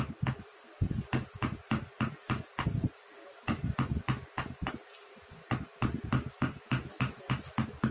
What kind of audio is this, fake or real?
real